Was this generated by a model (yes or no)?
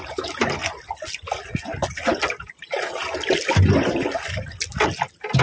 no